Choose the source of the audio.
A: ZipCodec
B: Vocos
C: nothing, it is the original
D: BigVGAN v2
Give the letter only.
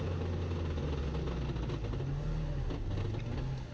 C